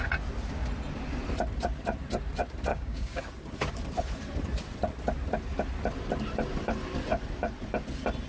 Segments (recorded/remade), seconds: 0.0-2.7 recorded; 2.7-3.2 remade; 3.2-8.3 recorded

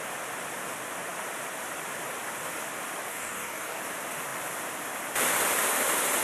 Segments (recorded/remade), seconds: 0.0-3.1 recorded; 3.1-3.8 remade; 3.8-6.2 recorded

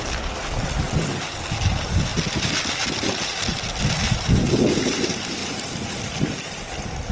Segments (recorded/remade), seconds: 0.0-7.1 recorded

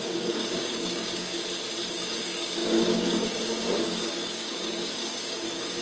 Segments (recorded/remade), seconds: 0.0-1.3 remade; 1.3-1.9 recorded; 1.9-5.8 remade